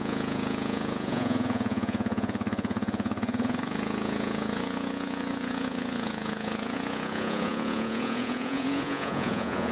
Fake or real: fake